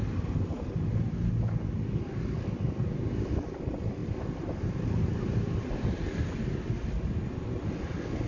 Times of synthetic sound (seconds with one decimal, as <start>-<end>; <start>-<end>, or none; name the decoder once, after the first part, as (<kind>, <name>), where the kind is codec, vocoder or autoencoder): none